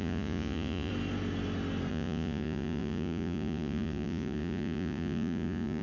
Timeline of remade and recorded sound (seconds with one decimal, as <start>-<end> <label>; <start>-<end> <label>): 0.0-0.9 remade; 0.9-1.9 recorded; 1.9-5.8 remade